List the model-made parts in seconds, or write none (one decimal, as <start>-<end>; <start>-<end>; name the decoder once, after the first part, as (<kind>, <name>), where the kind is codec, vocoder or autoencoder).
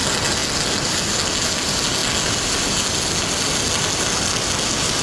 none